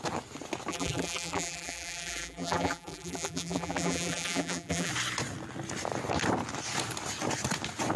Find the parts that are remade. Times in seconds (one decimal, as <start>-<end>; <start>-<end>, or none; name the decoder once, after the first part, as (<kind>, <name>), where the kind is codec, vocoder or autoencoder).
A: 0.7-4.9 (vocoder, BigVGAN v2)

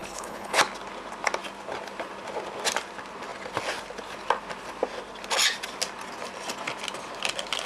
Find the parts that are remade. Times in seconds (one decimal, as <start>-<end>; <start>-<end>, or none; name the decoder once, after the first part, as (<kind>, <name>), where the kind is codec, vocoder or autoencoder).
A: 0.0-0.6 (codec, HILCodec)

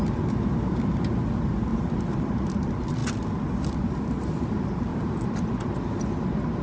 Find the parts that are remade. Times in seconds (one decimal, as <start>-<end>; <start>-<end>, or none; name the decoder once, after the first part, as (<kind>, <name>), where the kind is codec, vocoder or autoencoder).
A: 1.7-2.3 (vocoder, BigVGAN v2); 3.0-3.8; 4.9-6.1

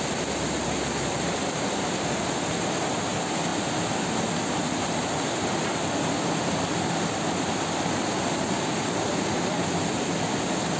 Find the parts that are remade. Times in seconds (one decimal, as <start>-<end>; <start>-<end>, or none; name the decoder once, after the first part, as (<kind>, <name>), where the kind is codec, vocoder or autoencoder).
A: none

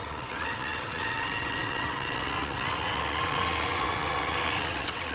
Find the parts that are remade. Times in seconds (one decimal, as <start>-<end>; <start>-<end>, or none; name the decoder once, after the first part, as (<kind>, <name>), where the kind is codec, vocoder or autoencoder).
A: 0.0-5.1 (vocoder, WaveNeXt)

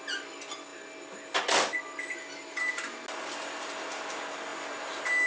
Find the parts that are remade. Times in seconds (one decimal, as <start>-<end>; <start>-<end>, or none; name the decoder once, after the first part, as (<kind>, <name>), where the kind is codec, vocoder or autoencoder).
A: none

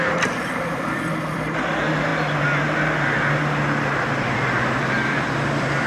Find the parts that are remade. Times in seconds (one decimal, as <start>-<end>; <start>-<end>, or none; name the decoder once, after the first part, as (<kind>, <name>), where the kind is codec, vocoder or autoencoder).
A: 0.0-2.1 (vocoder, BigVGAN v2); 4.2-5.9